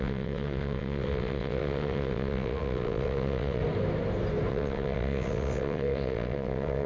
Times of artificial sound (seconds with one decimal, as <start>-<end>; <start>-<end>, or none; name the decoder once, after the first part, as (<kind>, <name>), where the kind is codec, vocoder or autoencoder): 0.0-3.6 (vocoder, WaveNeXt); 4.5-6.9